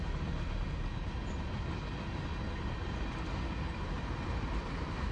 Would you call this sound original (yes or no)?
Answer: yes